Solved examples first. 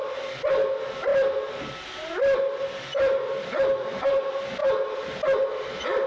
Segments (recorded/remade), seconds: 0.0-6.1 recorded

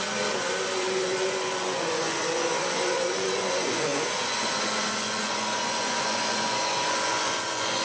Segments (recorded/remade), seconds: 0.0-7.8 remade

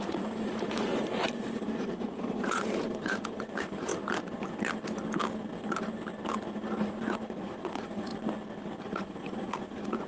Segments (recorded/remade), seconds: 0.0-0.9 remade; 0.9-1.4 recorded; 1.4-3.9 remade; 3.9-6.8 recorded; 6.8-8.1 remade; 8.1-8.8 recorded; 8.8-10.1 remade

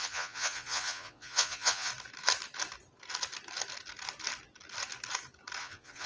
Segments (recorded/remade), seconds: 0.0-1.9 remade; 1.9-5.6 recorded; 5.6-6.1 remade

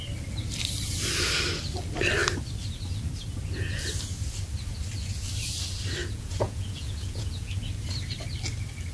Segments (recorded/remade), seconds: 0.0-6.0 recorded; 6.0-7.5 remade; 7.5-8.9 recorded

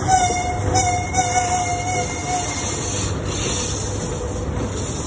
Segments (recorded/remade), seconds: 0.0-5.1 recorded

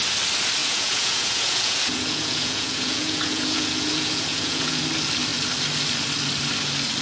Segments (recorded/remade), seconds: 0.0-0.6 recorded; 0.6-4.8 remade; 4.8-7.0 recorded

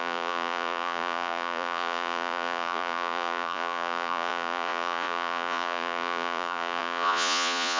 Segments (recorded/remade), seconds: 0.0-7.8 remade